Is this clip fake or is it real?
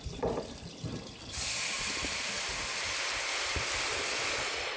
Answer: real